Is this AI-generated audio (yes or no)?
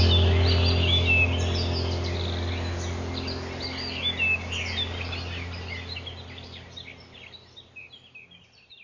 no